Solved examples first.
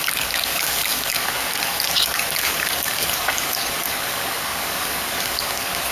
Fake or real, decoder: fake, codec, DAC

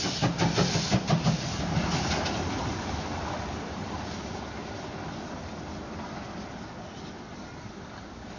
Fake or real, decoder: real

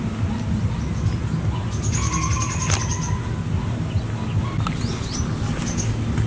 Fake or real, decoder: real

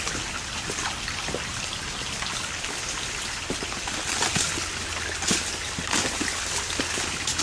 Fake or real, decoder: real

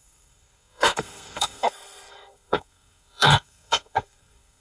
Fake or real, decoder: fake, codec, SNAC